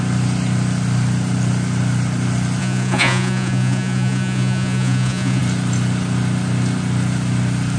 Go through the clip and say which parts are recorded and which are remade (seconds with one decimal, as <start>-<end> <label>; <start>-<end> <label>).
0.0-2.6 recorded; 2.6-5.4 remade; 5.4-7.8 recorded